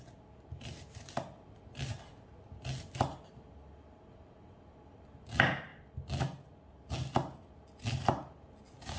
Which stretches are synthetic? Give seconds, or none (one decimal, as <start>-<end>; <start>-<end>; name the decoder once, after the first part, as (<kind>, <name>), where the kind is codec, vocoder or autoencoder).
none